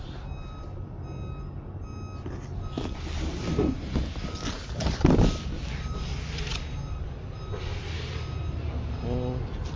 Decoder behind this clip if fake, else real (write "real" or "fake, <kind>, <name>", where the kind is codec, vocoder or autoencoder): real